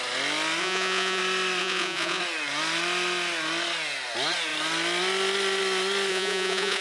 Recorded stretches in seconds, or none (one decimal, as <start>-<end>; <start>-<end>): 0.0-0.6; 1.2-1.6; 2.2-6.1

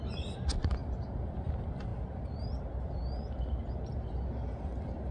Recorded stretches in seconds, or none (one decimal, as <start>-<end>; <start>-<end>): 0.0-5.1

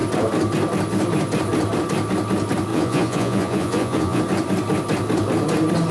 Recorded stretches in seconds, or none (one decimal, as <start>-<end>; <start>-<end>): 0.0-2.7; 4.2-5.9

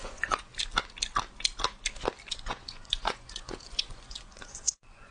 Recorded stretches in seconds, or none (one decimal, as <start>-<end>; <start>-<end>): 0.5-2.3

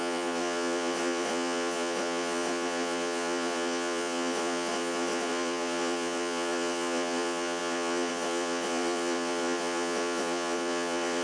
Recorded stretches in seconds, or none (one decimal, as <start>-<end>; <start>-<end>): none

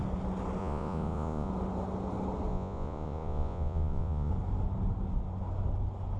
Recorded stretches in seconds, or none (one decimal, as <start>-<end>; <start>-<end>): 0.0-0.6; 1.5-2.5; 4.3-6.2

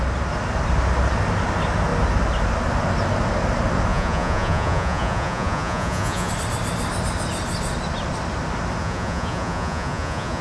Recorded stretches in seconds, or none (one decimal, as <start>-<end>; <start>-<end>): 0.0-3.9; 6.3-8.8